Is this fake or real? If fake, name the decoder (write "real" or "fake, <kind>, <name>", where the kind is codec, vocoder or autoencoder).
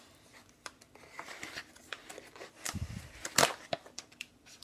fake, vocoder, BigVGAN v2